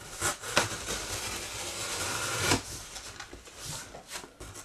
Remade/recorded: recorded